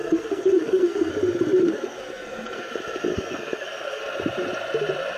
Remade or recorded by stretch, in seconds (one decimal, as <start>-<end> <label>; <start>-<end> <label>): 0.0-1.1 remade; 1.1-1.6 recorded; 1.6-2.7 remade; 2.7-3.1 recorded; 3.1-4.0 remade; 4.0-5.2 recorded